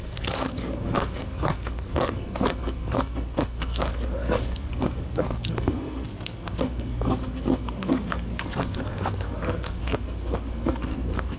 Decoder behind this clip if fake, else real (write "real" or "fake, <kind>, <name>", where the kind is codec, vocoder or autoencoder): fake, codec, SNAC